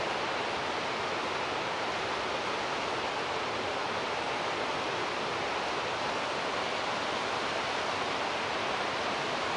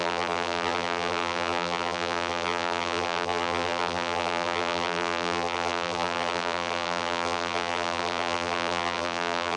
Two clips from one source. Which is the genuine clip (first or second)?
first